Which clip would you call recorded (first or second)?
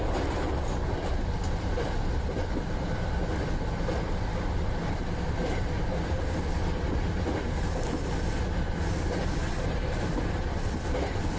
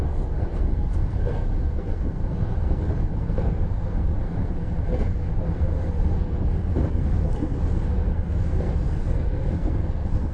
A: first